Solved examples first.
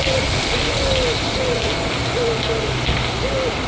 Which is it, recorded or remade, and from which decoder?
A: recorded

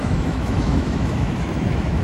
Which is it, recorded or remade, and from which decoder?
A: remade, autoencoder, DAC-VAE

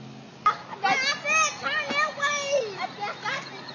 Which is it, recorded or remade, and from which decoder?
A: recorded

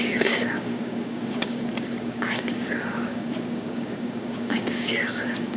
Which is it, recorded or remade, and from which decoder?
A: remade, codec, DAC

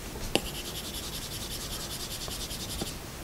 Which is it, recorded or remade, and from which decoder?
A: recorded